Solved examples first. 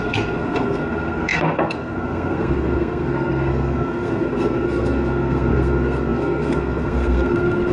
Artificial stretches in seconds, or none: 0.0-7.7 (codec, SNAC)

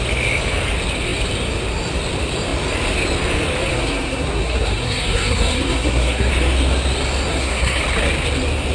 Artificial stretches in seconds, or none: 3.7-6.3 (codec, SNAC); 7.3-7.8

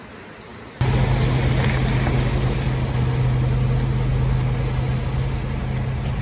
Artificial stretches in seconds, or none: none

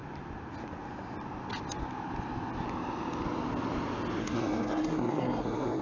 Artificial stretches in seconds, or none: 4.2-5.8 (codec, SNAC)